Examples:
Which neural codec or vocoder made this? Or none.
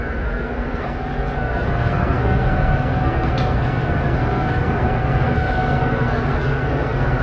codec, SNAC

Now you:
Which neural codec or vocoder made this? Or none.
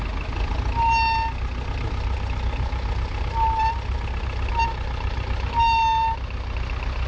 none